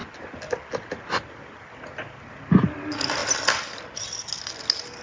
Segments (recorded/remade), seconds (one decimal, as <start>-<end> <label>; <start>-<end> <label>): 0.0-5.0 recorded